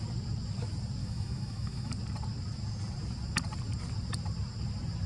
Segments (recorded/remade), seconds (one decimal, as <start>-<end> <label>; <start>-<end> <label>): 0.0-1.0 recorded; 1.0-1.9 remade; 1.9-5.1 recorded